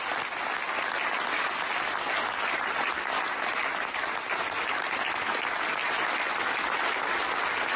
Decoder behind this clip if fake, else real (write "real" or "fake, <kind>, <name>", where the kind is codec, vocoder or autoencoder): real